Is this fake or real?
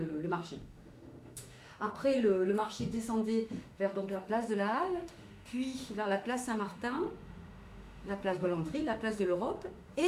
fake